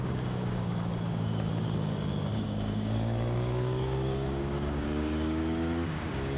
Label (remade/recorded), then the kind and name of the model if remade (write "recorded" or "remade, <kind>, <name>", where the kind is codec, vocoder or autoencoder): remade, codec, DAC